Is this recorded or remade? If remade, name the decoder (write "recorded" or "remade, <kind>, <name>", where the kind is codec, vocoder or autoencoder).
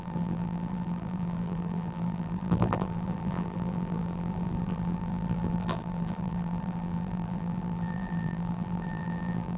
remade, vocoder, BigVGAN v2